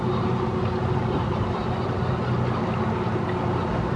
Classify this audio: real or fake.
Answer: real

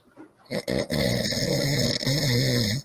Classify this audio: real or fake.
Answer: real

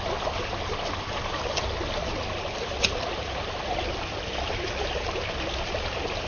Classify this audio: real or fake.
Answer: real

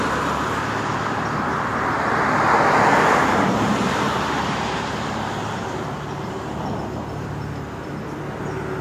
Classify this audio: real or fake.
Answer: real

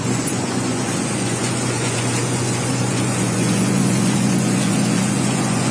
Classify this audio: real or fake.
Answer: fake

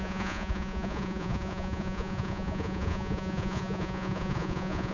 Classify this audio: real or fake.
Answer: fake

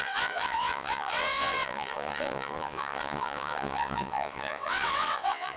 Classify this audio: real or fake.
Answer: fake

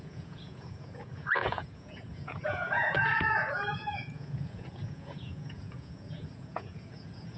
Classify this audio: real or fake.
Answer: fake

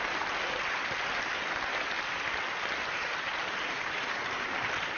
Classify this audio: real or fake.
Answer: real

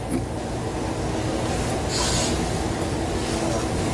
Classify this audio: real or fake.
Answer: real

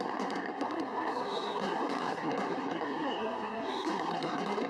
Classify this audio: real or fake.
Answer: fake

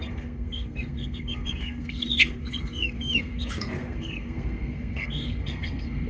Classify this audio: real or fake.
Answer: fake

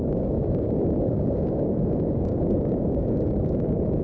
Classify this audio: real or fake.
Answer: fake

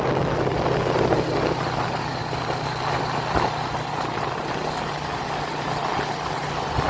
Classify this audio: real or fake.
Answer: real